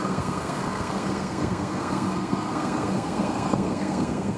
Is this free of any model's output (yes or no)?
no